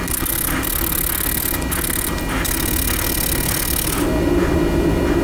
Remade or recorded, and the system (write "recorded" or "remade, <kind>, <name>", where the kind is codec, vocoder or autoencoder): recorded